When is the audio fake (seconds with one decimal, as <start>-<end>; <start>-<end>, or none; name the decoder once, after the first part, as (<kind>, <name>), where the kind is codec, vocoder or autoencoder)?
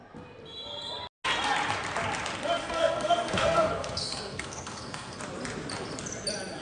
2.6-5.2 (codec, SNAC)